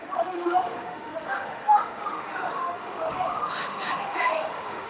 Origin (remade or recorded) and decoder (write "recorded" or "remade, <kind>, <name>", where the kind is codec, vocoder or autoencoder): remade, autoencoder, DAC-VAE